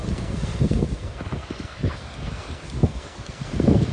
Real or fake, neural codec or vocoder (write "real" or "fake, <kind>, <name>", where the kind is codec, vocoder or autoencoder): fake, codec, SNAC